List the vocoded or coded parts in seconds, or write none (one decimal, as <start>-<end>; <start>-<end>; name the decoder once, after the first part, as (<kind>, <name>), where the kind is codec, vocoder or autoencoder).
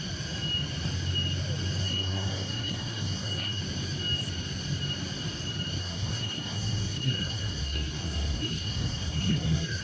1.8-3.6 (codec, SNAC); 5.8-9.8